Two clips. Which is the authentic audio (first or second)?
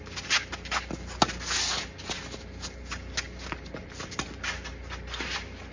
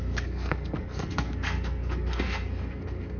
first